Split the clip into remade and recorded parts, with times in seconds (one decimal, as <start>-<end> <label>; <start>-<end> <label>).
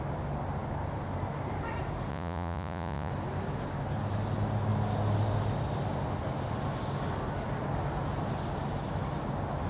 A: 0.0-2.1 recorded; 2.1-3.1 remade; 3.1-9.7 recorded